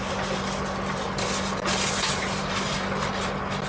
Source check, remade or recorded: recorded